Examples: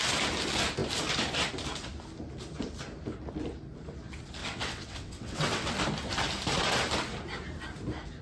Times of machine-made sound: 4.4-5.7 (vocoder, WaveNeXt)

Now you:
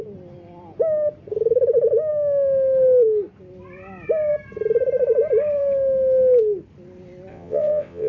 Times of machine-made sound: 7.3-8.1 (vocoder, WaveNeXt)

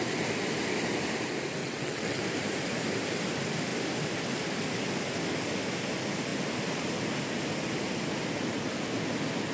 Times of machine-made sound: 1.6-2.2 (vocoder, WaveNeXt)

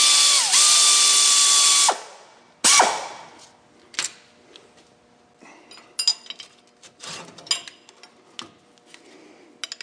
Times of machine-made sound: none

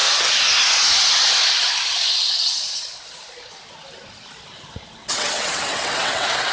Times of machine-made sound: 5.0-6.5 (vocoder, WaveNeXt)

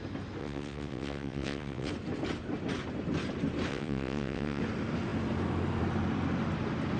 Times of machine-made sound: 0.4-1.9 (vocoder, WaveNeXt); 3.7-4.6